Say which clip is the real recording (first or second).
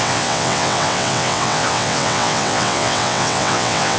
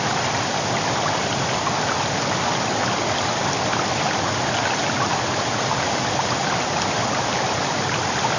second